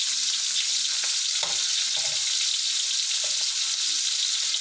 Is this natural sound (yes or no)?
yes